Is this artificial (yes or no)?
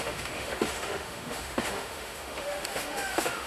yes